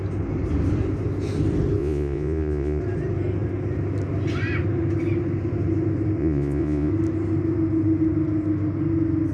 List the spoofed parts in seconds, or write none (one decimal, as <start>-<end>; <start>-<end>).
1.8-2.8; 6.2-6.9